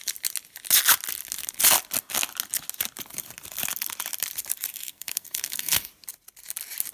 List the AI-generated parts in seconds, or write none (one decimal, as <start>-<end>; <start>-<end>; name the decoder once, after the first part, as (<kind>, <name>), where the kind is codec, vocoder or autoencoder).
4.7-5.9 (codec, SNAC)